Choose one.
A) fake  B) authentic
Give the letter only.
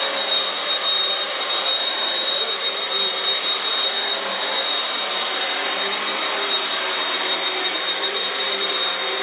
A